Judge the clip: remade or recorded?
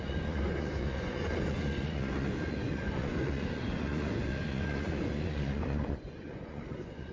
remade